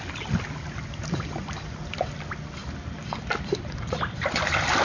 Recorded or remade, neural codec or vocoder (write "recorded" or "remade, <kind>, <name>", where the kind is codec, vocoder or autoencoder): recorded